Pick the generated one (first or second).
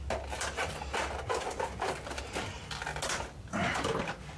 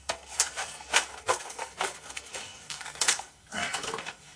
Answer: second